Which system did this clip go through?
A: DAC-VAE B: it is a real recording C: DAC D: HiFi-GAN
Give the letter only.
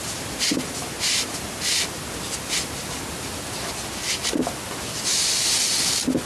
B